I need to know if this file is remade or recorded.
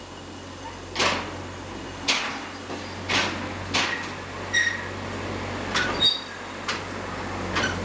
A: recorded